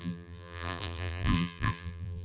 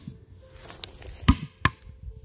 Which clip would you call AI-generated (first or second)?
first